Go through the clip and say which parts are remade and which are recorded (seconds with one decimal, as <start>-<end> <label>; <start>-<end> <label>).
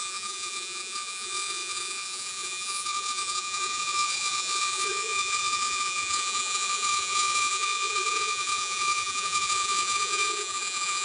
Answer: 0.0-11.0 remade